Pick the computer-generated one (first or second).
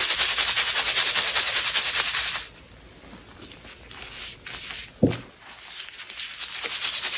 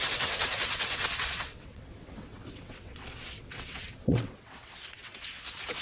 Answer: second